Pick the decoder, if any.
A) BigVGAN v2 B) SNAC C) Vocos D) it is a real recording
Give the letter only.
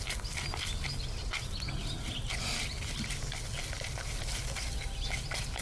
D